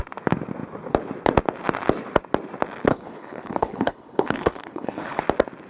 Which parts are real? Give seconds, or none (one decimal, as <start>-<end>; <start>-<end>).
0.0-2.9; 5.2-5.7